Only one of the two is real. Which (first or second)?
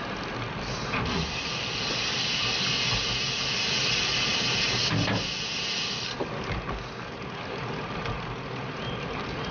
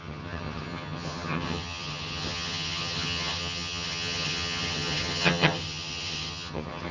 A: first